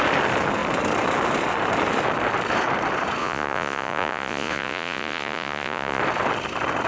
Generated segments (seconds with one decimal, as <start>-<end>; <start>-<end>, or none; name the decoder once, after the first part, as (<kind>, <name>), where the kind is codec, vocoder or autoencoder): 3.2-6.0 (vocoder, Vocos)